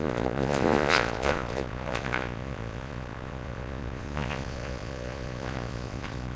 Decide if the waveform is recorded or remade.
remade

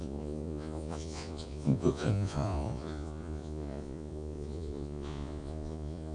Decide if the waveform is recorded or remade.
remade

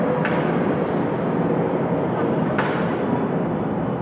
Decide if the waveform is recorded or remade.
recorded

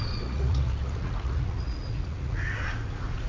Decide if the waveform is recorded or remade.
remade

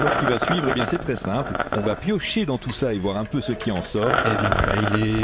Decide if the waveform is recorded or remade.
remade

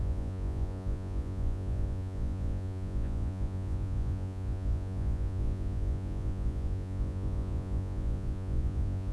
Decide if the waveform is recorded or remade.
remade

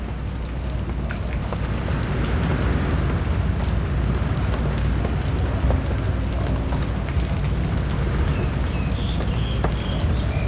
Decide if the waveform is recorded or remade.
recorded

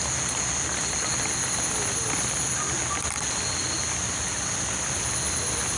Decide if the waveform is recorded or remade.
recorded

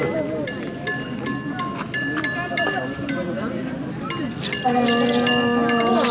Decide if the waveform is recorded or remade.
recorded